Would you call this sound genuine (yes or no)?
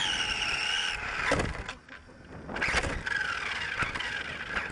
yes